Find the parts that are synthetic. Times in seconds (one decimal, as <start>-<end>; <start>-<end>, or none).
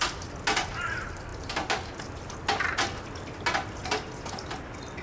none